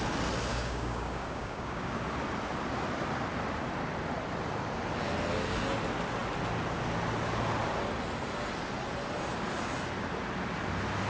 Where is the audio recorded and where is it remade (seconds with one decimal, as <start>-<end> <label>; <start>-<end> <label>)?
0.0-0.5 recorded; 0.5-1.9 remade; 1.9-11.1 recorded